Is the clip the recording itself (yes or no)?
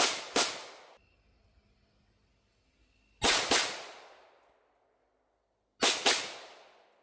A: yes